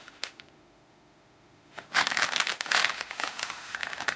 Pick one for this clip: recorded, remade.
remade